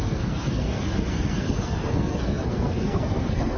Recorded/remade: remade